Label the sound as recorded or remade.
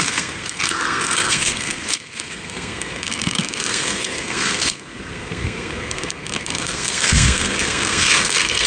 remade